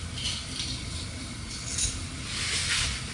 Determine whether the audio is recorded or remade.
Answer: recorded